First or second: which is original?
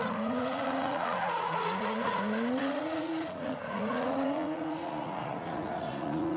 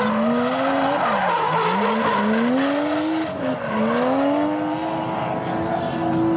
second